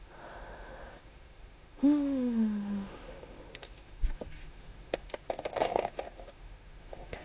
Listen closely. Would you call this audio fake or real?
fake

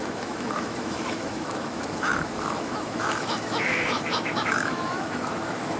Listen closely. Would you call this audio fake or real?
fake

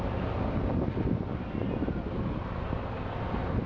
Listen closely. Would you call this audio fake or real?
real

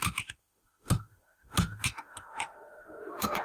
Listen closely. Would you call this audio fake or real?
fake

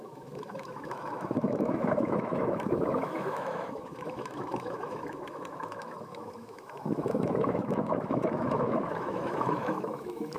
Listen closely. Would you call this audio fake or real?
fake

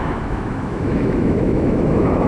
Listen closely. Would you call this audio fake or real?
fake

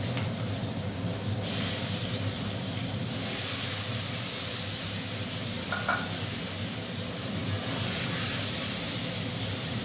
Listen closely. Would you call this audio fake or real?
real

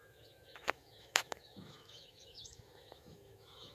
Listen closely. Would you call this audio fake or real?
fake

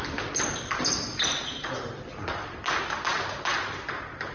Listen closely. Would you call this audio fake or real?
real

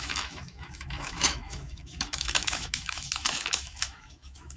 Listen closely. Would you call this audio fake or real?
fake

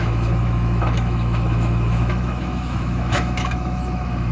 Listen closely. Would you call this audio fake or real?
fake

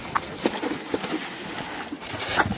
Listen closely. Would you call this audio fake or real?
real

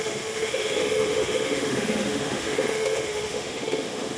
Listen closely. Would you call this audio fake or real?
fake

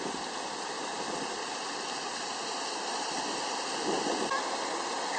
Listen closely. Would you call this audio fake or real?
real